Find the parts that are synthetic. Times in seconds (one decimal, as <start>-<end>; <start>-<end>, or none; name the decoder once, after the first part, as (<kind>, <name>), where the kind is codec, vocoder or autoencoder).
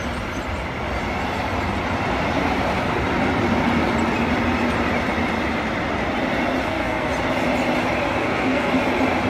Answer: 6.6-7.1 (codec, SNAC); 8.2-8.7